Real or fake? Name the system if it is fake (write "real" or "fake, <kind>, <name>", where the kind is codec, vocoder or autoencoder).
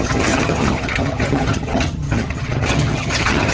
fake, vocoder, HiFi-GAN